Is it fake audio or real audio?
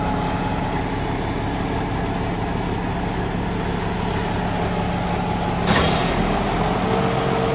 real